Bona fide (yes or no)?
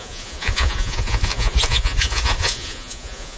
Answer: no